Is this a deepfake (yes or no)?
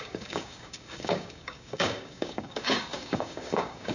yes